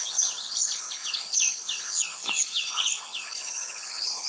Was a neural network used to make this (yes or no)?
yes